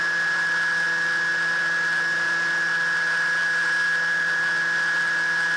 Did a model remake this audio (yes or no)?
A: no